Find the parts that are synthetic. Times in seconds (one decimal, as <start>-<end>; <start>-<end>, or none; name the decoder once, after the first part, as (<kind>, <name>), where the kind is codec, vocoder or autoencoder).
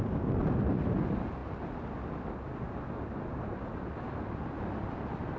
none